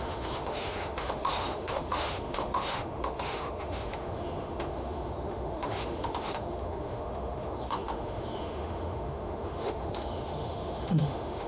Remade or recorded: remade